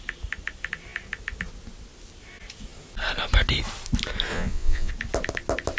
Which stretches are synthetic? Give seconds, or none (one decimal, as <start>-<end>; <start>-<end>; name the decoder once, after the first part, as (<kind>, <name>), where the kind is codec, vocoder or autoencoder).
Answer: 4.3-4.9 (vocoder, Vocos)